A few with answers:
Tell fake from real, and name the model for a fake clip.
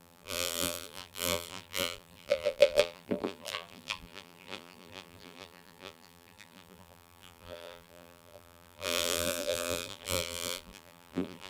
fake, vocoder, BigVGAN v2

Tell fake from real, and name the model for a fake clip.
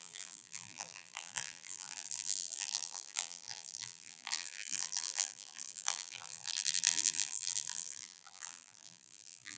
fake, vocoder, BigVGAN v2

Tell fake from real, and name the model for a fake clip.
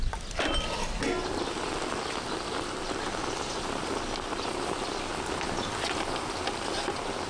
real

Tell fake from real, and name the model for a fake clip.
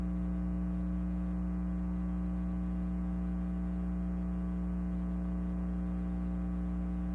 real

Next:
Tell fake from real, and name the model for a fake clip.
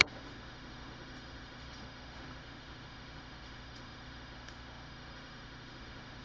fake, autoencoder, DAC-VAE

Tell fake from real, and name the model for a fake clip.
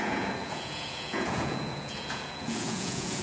fake, vocoder, Vocos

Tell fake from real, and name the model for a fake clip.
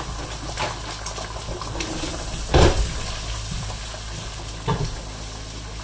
real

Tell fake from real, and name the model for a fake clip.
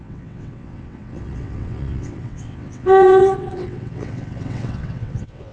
fake, vocoder, WaveNeXt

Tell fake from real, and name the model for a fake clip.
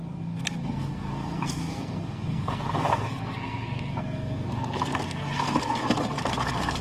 fake, codec, SNAC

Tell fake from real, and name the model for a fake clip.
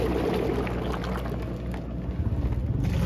real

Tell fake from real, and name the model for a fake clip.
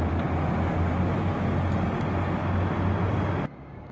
real